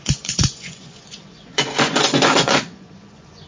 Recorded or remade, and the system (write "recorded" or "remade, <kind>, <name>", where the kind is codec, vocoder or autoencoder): remade, vocoder, Vocos